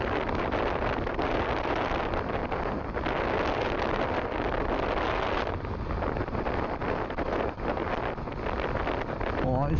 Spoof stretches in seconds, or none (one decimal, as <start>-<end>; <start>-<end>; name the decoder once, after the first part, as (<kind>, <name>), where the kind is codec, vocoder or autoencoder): none